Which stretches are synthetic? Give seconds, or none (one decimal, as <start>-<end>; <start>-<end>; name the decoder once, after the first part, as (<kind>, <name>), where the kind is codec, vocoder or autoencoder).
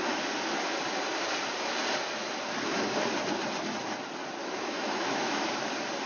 4.4-5.5 (autoencoder, DAC-VAE)